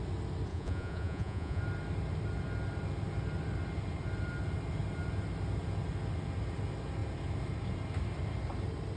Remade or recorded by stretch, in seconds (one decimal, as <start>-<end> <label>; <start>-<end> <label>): 0.0-0.5 recorded; 0.5-1.6 remade; 1.6-9.0 recorded